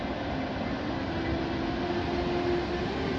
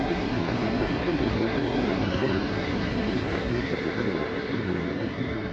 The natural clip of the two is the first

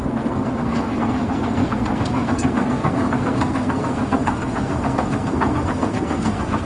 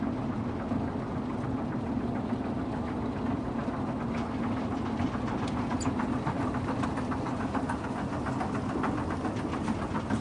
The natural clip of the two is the second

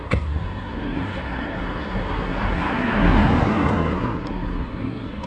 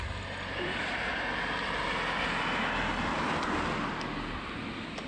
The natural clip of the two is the second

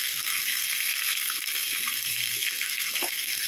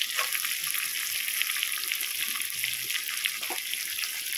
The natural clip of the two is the second